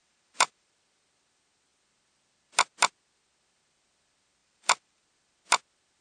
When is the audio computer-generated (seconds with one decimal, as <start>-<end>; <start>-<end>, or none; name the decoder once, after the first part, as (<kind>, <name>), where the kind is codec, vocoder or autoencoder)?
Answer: 0.0-0.7 (vocoder, BigVGAN v2); 4.4-5.0